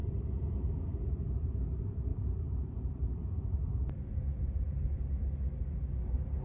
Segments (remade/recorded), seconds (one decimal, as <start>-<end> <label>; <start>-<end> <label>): 0.0-0.6 remade; 0.6-2.1 recorded; 2.1-4.2 remade; 4.2-6.4 recorded

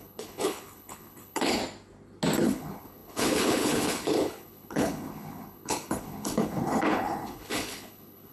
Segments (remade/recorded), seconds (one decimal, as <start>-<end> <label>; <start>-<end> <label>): 0.0-1.6 remade; 1.6-2.4 recorded; 2.4-8.3 remade

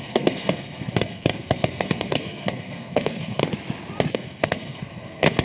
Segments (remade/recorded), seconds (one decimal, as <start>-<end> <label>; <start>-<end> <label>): 0.0-3.4 remade; 3.4-4.1 recorded; 4.1-5.4 remade